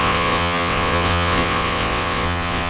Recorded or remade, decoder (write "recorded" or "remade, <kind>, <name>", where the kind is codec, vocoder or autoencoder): remade, vocoder, WaveNeXt